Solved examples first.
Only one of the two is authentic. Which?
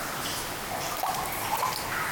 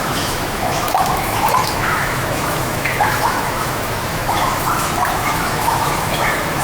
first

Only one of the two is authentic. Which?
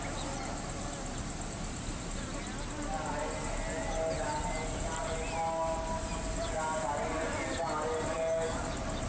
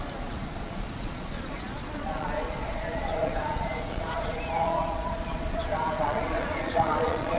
first